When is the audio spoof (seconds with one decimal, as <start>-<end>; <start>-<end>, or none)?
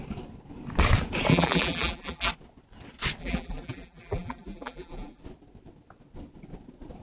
1.3-2.3; 3.2-5.2